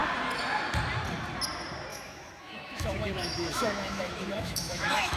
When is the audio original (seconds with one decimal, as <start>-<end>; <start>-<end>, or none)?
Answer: 0.0-1.9